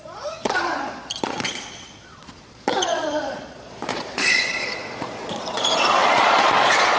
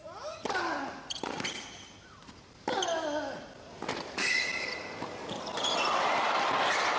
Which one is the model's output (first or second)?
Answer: first